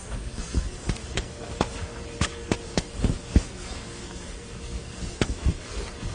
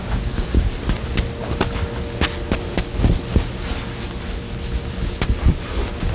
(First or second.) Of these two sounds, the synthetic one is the first